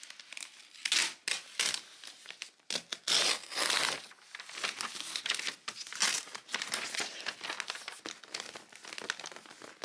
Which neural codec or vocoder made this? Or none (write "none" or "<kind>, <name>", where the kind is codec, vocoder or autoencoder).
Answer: none